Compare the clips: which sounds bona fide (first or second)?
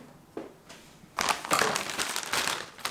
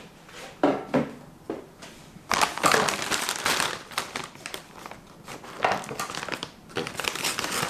first